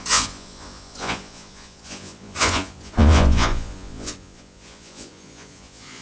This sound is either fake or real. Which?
fake